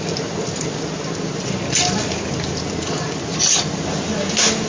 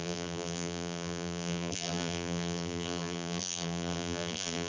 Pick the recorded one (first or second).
first